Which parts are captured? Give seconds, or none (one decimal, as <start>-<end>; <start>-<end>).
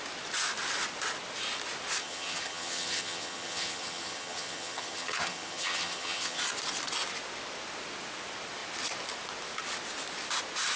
0.0-2.0; 6.4-10.8